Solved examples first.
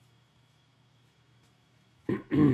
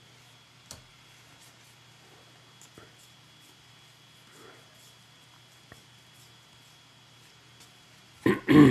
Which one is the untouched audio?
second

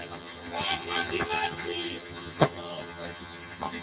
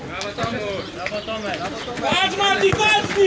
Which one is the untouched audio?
second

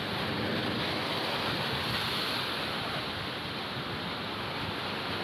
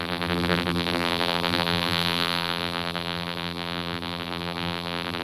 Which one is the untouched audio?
first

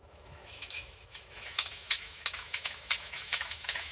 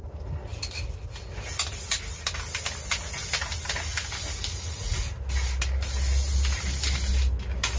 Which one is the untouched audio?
second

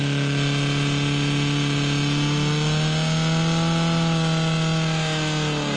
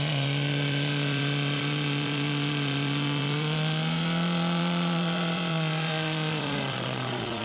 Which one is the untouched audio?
first